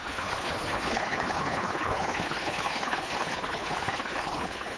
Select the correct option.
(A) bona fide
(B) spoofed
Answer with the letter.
B